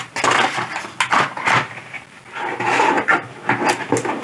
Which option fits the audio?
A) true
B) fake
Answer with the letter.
A